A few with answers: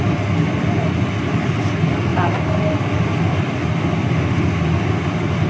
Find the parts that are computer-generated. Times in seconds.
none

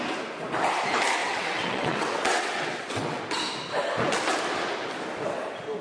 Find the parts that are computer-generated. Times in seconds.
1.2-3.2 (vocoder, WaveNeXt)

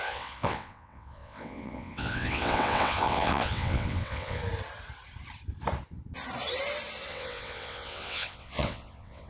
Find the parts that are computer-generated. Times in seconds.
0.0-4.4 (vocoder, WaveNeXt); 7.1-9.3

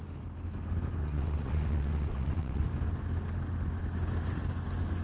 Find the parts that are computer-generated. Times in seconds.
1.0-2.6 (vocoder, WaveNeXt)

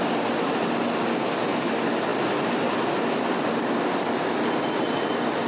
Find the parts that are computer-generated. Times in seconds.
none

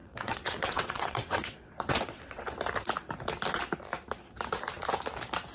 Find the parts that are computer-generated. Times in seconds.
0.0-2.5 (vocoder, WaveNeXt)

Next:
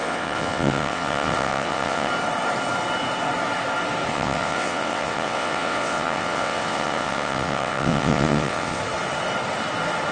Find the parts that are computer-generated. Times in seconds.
0.0-2.1 (vocoder, WaveNeXt); 4.1-8.8

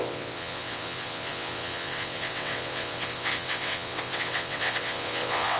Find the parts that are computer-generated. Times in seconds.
0.0-5.6 (vocoder, WaveNeXt)